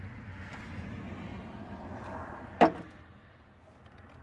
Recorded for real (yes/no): yes